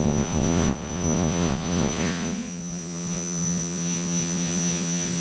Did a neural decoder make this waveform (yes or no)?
yes